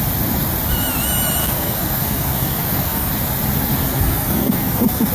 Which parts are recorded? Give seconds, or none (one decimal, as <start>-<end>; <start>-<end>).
0.0-1.4; 3.1-3.9